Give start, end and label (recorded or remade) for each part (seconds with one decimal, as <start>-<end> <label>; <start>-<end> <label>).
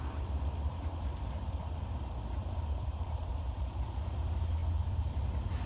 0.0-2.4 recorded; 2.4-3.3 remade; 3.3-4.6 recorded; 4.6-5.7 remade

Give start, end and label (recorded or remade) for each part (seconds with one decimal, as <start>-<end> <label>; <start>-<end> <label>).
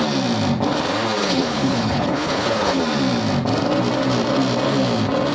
0.0-1.2 recorded; 1.2-2.8 remade; 2.8-5.3 recorded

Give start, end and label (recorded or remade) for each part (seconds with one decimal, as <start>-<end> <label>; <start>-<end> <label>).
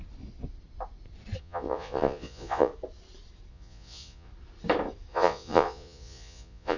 0.0-1.4 recorded; 1.4-2.7 remade; 2.7-3.5 recorded; 3.5-4.3 remade; 4.3-5.1 recorded; 5.1-6.8 remade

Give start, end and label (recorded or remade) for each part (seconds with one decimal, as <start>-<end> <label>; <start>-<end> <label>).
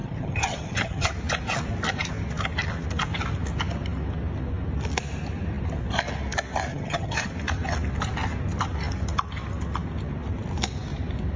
0.0-1.1 remade; 1.1-6.7 recorded; 6.7-7.3 remade; 7.3-11.4 recorded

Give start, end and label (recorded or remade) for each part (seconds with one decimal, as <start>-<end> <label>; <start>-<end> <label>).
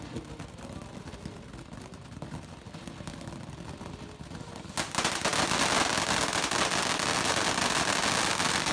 0.0-8.7 recorded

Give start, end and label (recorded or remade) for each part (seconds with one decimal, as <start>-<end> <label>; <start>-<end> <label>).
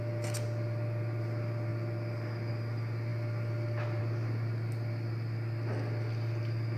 0.0-6.8 recorded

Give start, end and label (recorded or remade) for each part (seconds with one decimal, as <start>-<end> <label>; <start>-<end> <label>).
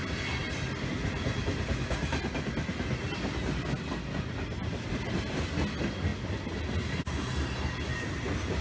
0.0-8.6 recorded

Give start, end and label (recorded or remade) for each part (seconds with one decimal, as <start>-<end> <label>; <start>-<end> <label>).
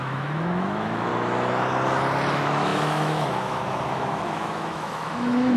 0.0-1.1 remade; 1.1-2.3 recorded; 2.3-5.6 remade